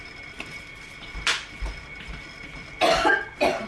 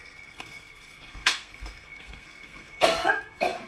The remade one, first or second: second